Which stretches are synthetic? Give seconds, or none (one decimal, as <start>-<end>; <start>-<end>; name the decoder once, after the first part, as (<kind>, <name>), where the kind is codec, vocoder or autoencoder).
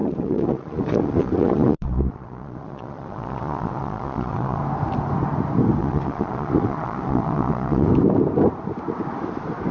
0.0-4.6 (vocoder, Vocos); 5.8-7.9